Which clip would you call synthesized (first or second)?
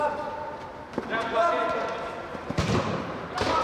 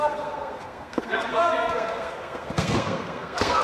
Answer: second